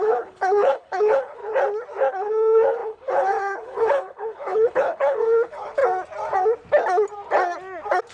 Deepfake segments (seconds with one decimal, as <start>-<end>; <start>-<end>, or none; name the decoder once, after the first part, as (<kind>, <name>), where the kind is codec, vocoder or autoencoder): 0.0-1.4 (codec, HILCodec); 2.1-5.8